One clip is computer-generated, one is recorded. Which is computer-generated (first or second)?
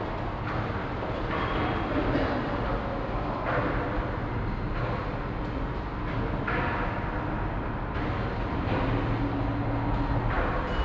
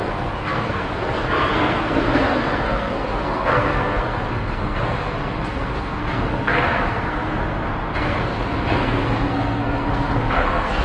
second